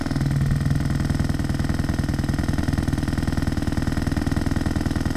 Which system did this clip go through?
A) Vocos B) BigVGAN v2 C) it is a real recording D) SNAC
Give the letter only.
C